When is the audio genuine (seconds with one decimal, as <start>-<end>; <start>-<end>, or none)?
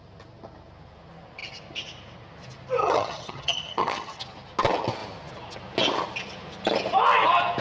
0.0-2.8; 4.2-7.6